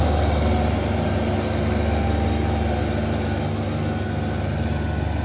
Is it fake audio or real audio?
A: real